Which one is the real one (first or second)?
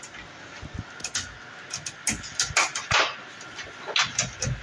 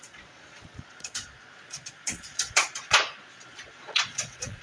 first